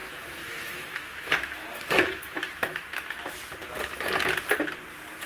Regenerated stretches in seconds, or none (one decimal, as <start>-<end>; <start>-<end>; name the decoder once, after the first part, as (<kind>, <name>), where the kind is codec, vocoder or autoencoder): 0.0-3.2 (autoencoder, DAC-VAE)